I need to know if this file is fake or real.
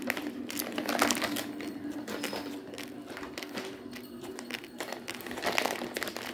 real